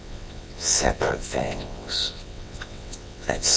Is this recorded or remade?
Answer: remade